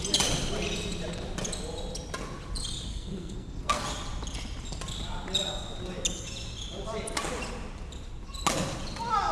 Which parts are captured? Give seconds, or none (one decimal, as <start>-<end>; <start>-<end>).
0.0-2.9; 3.8-9.3